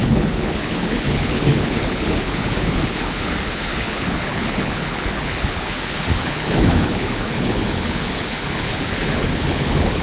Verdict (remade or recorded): remade